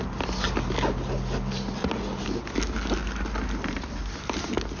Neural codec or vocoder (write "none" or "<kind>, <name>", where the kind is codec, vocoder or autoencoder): none